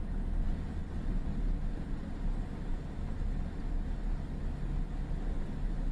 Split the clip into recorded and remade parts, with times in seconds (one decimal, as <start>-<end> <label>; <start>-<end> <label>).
0.0-5.9 recorded